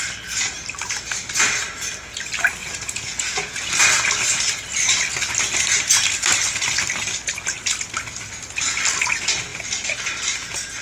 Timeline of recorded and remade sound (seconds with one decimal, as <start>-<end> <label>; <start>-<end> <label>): 0.0-2.6 recorded; 2.6-3.7 remade; 3.7-10.8 recorded